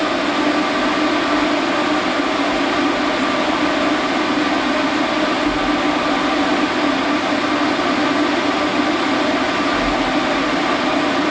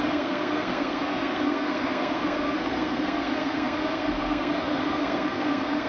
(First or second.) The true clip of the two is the first